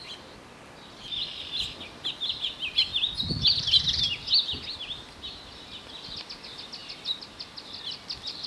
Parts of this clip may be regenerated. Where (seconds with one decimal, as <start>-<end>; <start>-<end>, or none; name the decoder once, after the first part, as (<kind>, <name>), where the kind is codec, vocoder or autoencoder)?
none